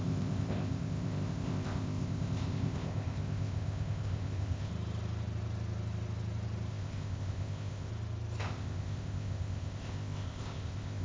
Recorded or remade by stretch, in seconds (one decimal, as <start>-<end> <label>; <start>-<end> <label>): 0.0-4.7 remade; 4.7-6.7 recorded; 6.7-7.9 remade; 7.9-8.4 recorded; 8.4-11.0 remade